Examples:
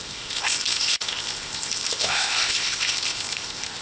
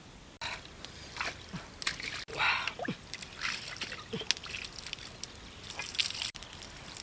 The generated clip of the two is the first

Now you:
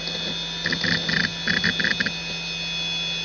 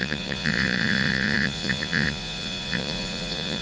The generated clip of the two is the second